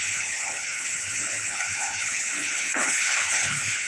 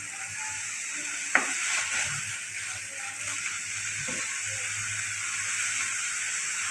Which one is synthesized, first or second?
first